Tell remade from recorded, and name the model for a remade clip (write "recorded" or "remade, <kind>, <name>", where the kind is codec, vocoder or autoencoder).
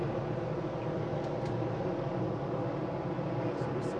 recorded